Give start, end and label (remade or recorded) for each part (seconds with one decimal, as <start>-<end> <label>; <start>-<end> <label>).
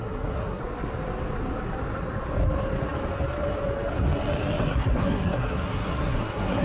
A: 0.0-0.6 remade; 0.6-4.6 recorded; 4.6-6.6 remade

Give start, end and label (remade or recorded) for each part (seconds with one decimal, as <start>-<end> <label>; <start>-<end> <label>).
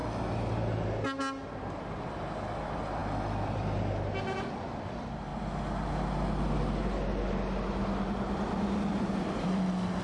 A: 0.0-1.7 recorded; 1.7-5.3 remade; 5.3-8.2 recorded; 8.2-10.0 remade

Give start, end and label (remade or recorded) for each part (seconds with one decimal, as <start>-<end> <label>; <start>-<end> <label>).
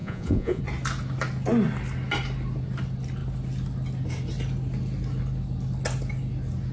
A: 0.0-0.6 remade; 0.6-6.7 recorded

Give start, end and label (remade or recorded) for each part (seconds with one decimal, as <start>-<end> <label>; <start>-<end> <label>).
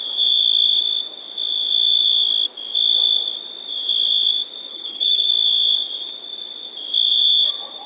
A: 0.0-4.7 recorded; 4.7-5.3 remade; 5.3-7.9 recorded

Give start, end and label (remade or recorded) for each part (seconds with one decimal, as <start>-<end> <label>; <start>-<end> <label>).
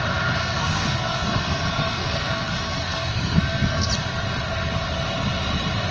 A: 0.0-0.4 recorded; 0.4-3.9 remade; 3.9-5.9 recorded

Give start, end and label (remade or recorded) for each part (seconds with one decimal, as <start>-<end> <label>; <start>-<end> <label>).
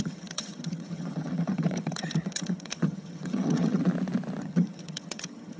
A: 0.0-3.8 remade; 3.8-4.4 recorded; 4.4-5.6 remade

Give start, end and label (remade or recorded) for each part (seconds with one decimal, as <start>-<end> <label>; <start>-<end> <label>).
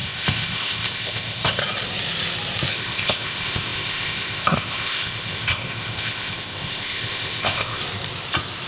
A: 0.0-1.6 remade; 1.6-2.7 recorded; 2.7-7.8 remade; 7.8-8.7 recorded